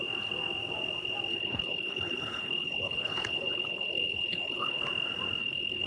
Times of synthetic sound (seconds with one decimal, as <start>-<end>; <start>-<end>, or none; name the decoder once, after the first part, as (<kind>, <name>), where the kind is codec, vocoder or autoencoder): 1.3-4.8 (codec, HILCodec); 5.4-5.9